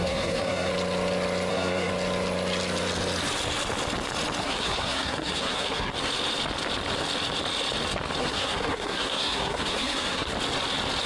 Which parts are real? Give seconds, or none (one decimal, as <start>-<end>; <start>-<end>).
0.7-1.5; 1.9-4.4; 5.9-8.2; 10.3-11.1